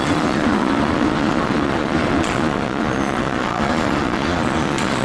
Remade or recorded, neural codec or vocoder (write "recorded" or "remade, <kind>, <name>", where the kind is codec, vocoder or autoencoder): remade, vocoder, Vocos